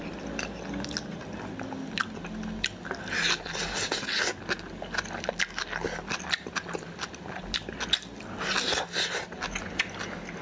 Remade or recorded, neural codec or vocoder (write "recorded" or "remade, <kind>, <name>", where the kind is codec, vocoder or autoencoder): recorded